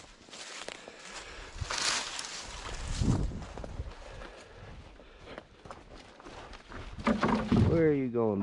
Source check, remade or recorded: recorded